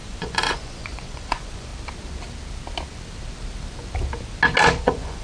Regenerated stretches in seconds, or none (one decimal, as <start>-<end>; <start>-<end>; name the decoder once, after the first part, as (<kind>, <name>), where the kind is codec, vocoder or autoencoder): 0.0-1.7 (vocoder, Vocos); 4.8-5.2